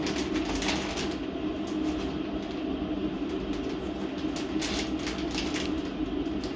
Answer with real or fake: real